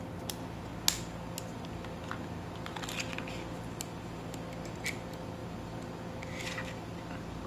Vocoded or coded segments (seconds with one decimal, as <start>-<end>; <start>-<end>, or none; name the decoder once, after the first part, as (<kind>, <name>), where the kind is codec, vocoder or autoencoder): none